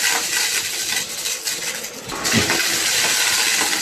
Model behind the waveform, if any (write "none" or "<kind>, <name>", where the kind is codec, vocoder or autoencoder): none